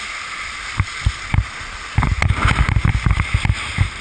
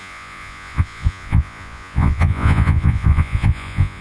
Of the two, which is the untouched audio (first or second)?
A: first